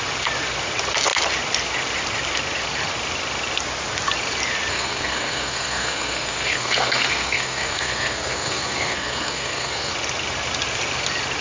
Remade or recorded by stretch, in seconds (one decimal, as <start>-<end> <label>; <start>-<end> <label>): 0.0-4.7 recorded; 4.7-9.9 remade; 9.9-11.4 recorded